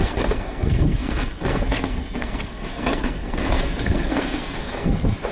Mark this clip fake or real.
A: fake